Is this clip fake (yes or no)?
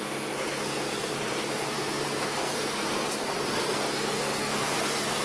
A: yes